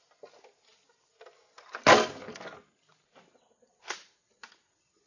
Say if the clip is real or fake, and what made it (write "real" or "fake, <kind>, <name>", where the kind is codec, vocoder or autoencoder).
real